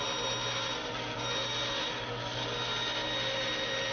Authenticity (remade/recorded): recorded